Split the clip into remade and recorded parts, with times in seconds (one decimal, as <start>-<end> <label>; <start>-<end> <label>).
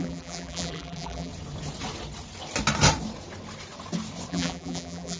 0.0-1.3 remade; 1.3-4.3 recorded; 4.3-5.2 remade